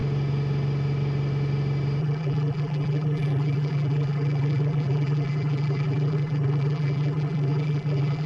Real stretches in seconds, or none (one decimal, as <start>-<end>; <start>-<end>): 0.0-2.0